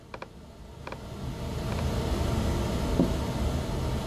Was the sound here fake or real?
real